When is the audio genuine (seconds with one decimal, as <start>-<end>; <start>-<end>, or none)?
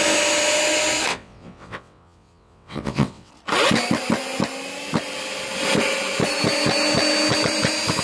0.0-1.1; 3.3-8.0